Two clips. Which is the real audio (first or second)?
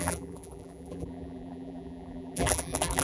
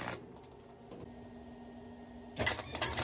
second